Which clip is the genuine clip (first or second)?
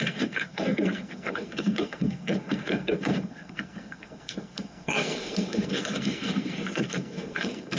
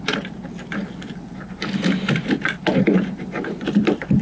second